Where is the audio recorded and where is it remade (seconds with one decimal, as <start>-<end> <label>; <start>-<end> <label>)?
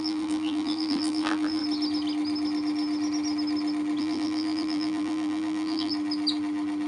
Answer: 0.0-1.6 remade; 1.6-4.0 recorded; 4.0-5.9 remade; 5.9-6.9 recorded